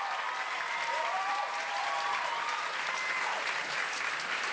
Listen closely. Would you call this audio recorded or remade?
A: recorded